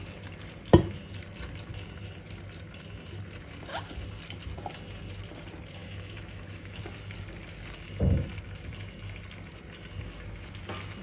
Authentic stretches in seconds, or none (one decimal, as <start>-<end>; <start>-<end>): 0.0-5.8; 6.8-11.0